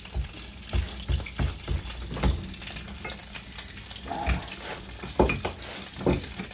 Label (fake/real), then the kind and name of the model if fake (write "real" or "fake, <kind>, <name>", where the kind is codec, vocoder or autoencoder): real